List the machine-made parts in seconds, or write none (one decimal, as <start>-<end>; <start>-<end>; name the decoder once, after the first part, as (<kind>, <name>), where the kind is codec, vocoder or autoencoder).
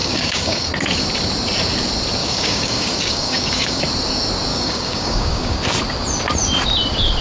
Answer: 0.0-0.7 (codec, DAC); 2.2-3.8; 4.5-5.6